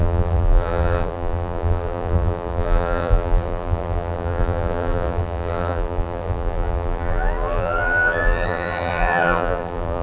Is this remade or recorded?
remade